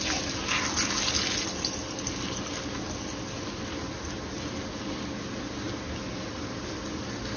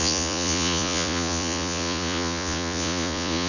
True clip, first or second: first